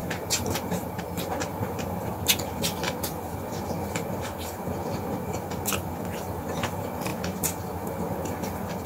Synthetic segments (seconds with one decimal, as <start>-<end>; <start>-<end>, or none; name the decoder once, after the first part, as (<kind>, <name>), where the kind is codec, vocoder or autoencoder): 0.0-1.0 (vocoder, BigVGAN v2); 1.5-2.1